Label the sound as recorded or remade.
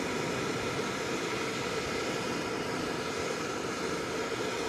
recorded